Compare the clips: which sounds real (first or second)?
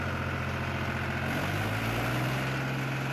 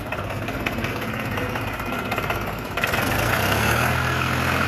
first